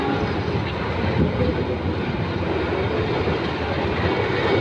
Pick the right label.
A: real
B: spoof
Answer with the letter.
A